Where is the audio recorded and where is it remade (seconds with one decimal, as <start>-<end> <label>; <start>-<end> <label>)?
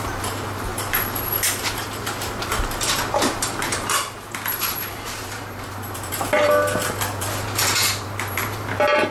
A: 0.0-9.1 remade